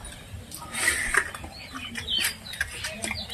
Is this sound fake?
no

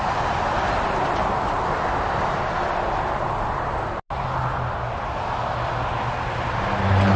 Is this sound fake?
no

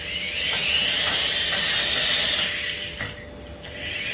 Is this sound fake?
no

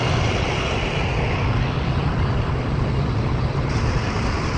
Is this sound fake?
no